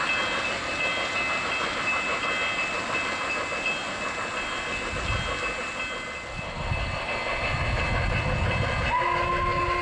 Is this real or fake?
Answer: real